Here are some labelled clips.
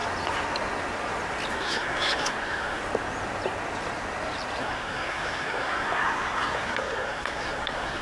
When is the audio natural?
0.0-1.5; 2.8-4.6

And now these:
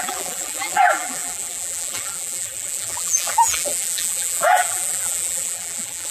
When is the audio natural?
none

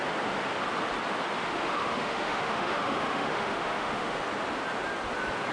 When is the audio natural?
0.0-1.4; 4.2-5.5

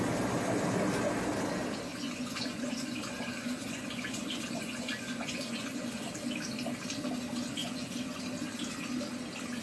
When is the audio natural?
0.0-1.9; 6.1-7.6; 8.2-9.6